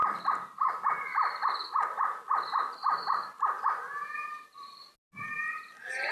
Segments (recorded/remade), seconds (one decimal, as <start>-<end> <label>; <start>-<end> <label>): 0.0-6.1 recorded